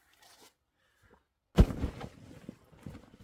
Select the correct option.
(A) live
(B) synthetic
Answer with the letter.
A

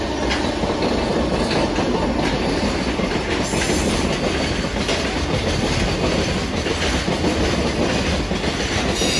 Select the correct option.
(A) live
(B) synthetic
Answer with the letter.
A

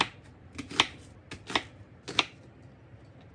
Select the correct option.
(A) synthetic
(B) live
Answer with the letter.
B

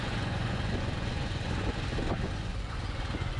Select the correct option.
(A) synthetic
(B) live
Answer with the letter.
A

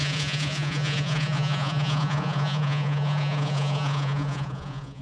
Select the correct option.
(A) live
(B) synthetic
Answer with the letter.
B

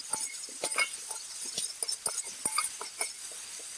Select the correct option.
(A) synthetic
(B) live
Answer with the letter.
B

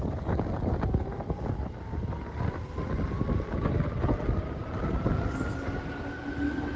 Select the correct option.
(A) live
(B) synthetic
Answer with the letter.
A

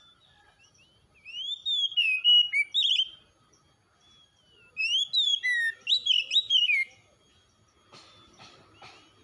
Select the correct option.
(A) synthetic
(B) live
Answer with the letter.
B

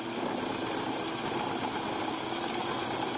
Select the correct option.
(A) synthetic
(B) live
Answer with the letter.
B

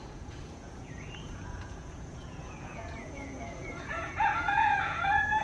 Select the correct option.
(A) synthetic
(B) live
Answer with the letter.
A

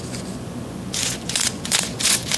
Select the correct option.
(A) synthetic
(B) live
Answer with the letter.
A